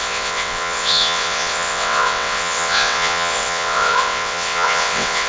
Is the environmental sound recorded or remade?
remade